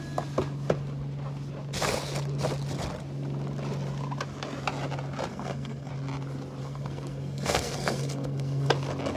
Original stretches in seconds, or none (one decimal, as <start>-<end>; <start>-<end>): 0.0-5.3; 5.9-6.6; 8.7-9.2

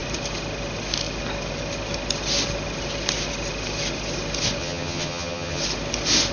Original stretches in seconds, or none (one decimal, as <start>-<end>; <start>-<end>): 0.0-4.6; 5.6-6.3

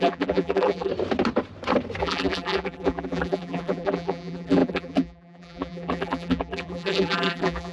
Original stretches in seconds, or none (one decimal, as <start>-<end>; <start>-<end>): 0.9-2.0

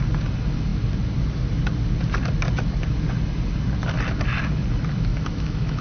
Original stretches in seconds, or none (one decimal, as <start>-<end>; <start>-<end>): 0.0-5.1

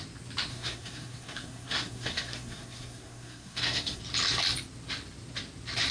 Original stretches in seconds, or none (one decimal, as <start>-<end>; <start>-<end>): 0.0-0.5; 4.0-5.9

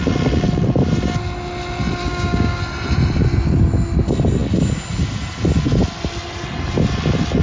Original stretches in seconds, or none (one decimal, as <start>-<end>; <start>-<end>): 0.0-2.0; 2.6-7.4